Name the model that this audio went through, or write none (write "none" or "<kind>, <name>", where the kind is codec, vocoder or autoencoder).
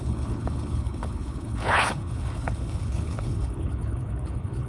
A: codec, HILCodec